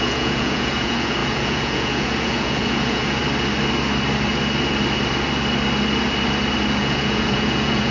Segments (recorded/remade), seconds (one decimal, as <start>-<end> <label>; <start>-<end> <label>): 0.0-3.2 remade; 3.2-6.8 recorded; 6.8-7.9 remade